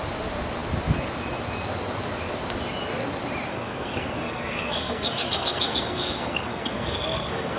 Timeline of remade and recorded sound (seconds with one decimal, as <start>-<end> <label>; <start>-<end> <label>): 0.0-3.5 recorded; 3.5-7.6 remade

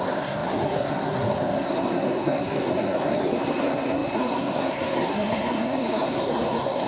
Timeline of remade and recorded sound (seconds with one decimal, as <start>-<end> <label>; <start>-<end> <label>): 0.0-6.9 remade

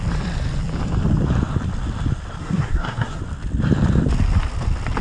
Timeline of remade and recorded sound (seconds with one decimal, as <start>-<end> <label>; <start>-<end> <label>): 0.0-2.4 recorded; 2.4-3.2 remade; 3.2-5.0 recorded

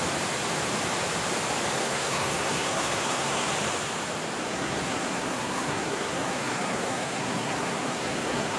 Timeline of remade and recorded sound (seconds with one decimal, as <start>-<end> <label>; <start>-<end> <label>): 0.0-1.8 recorded; 1.8-3.5 remade; 3.5-4.4 recorded; 4.4-8.6 remade